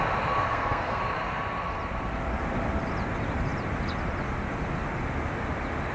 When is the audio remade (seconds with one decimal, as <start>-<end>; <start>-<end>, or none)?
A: 0.5-1.0